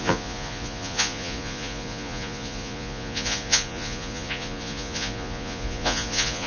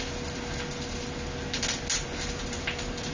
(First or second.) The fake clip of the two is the first